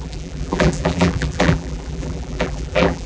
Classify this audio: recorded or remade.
remade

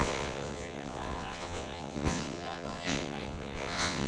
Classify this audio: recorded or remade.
remade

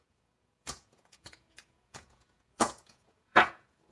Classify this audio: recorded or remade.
remade